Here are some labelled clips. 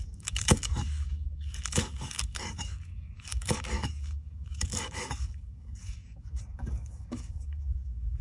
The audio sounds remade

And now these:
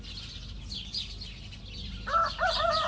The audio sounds recorded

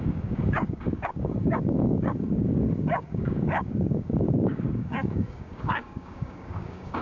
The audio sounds remade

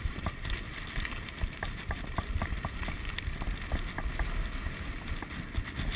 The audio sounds recorded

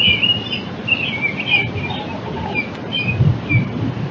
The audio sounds recorded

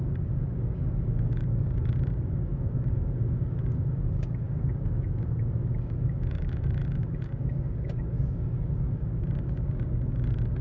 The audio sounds remade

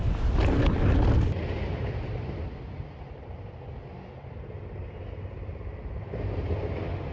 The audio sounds recorded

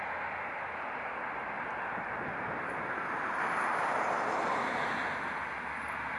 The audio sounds recorded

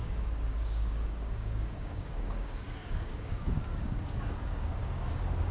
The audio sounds remade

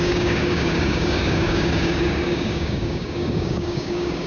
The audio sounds remade